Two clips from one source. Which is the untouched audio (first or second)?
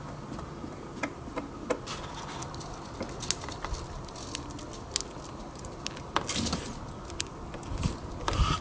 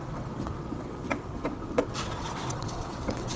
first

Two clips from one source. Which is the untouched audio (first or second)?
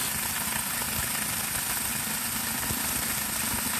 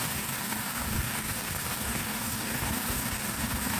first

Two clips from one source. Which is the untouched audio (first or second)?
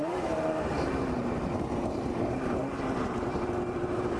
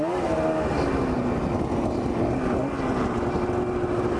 second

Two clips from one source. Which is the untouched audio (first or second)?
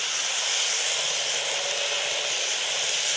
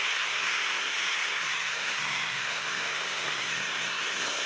first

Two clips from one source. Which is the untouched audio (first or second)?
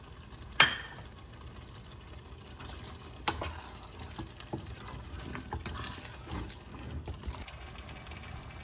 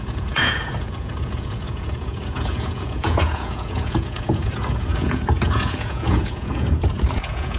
first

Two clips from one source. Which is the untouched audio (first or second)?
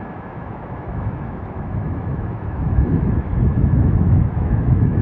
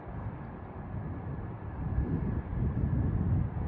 second